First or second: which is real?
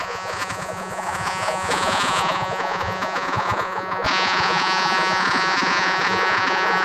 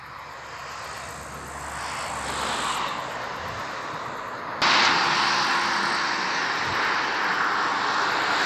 second